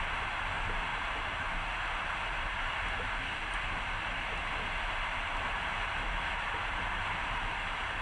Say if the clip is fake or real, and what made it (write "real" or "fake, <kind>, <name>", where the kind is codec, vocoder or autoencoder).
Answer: real